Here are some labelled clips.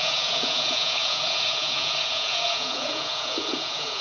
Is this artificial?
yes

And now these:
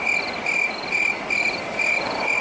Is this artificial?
no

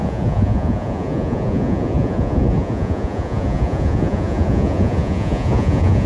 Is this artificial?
yes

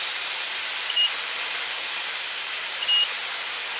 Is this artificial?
no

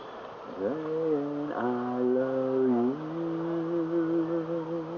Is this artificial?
no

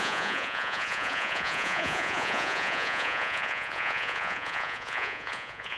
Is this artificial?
yes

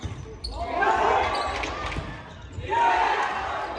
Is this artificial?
no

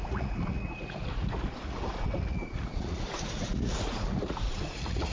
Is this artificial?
yes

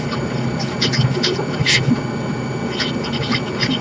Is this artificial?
no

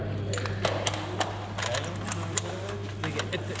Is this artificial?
no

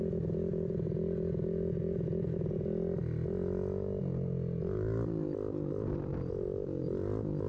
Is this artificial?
no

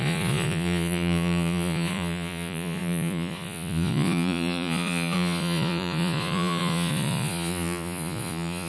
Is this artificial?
yes